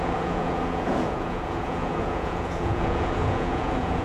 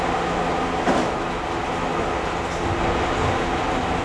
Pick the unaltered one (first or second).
second